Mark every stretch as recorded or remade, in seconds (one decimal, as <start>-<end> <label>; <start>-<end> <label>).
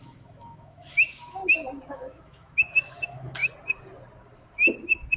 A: 0.0-1.4 remade; 1.4-1.9 recorded; 1.9-3.4 remade; 3.4-5.2 recorded